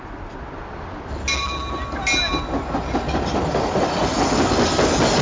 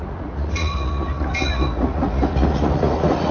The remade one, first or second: second